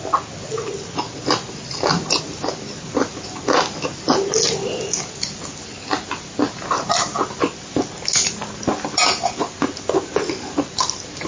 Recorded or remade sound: recorded